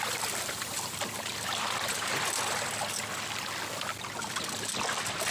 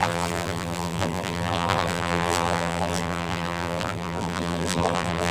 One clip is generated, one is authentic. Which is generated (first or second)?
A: second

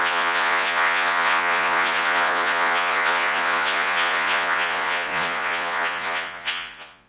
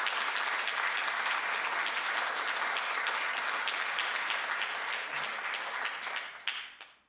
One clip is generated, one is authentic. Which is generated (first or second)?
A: first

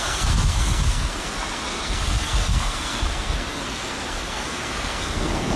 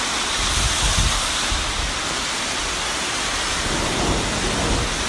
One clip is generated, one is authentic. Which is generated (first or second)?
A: first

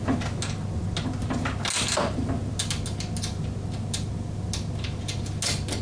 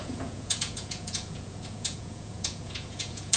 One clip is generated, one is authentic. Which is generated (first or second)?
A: second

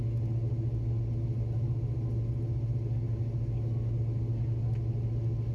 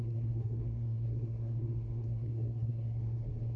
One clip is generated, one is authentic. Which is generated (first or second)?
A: second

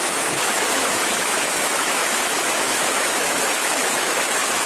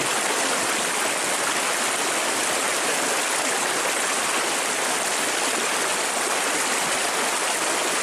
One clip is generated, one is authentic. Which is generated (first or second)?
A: first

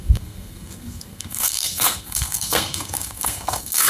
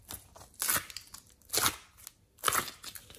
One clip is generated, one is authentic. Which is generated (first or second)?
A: first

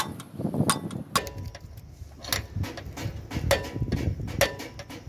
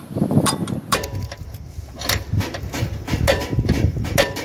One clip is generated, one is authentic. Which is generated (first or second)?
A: second